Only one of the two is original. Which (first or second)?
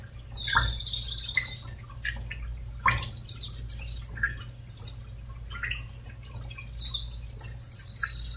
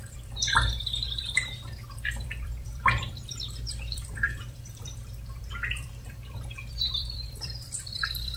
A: first